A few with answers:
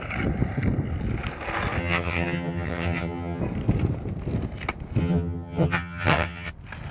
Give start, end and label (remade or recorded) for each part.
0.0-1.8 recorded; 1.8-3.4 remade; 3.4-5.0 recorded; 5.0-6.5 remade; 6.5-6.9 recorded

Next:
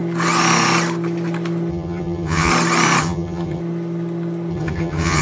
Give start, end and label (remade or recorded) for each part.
0.0-1.7 recorded; 1.7-2.5 remade; 2.5-3.0 recorded; 3.0-3.6 remade; 3.6-4.5 recorded; 4.5-5.2 remade

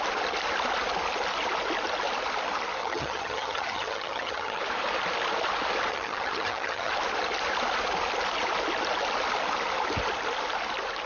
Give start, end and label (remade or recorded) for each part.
0.0-2.8 recorded; 2.8-4.6 remade; 4.6-5.9 recorded; 5.9-6.9 remade; 6.9-11.1 recorded

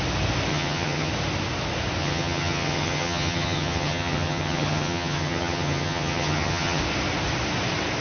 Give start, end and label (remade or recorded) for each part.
0.0-0.5 recorded; 0.5-1.1 remade; 1.1-2.0 recorded; 2.0-6.8 remade; 6.8-8.0 recorded

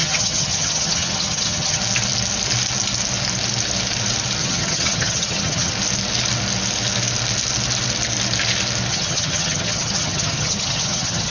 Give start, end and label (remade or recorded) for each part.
0.0-1.8 remade; 1.8-4.4 recorded; 4.4-5.7 remade; 5.7-8.9 recorded; 8.9-11.3 remade

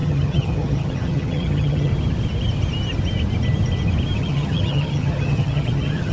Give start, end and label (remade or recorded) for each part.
0.0-1.9 remade; 1.9-4.2 recorded; 4.2-6.1 remade

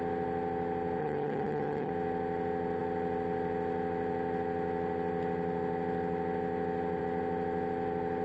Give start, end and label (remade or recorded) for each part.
0.0-1.0 recorded; 1.0-1.9 remade; 1.9-8.2 recorded